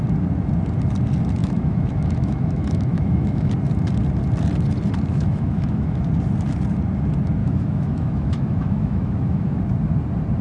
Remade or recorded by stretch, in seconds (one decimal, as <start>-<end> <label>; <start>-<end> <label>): 0.0-1.4 recorded; 1.4-3.5 remade; 3.5-5.1 recorded; 5.1-6.0 remade; 6.0-7.4 recorded; 7.4-9.6 remade; 9.6-10.4 recorded